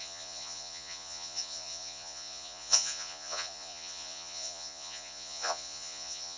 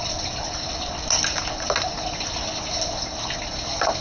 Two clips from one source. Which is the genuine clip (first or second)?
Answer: second